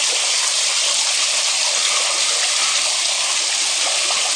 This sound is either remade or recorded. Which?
recorded